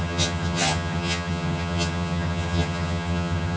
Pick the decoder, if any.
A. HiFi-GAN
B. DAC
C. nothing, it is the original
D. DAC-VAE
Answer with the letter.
A